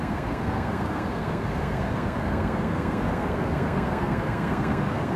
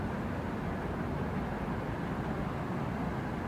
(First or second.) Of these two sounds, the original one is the second